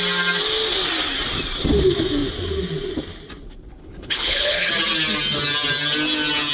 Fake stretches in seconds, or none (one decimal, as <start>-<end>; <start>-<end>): 3.8-4.7